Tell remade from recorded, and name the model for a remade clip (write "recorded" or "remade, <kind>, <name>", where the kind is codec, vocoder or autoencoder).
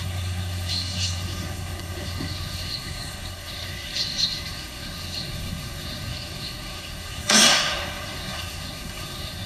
remade, codec, SNAC